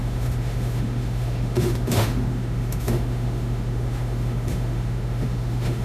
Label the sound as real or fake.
fake